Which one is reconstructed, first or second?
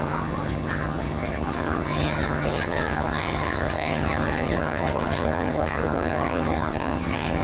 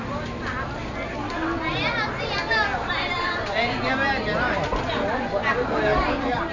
first